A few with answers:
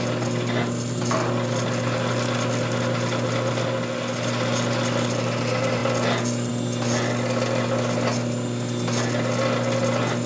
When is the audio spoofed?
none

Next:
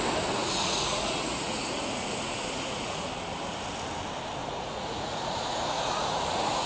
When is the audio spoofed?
0.4-3.1; 4.4-6.7